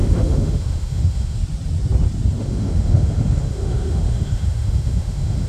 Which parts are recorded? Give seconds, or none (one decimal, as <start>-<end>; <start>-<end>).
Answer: 1.4-2.4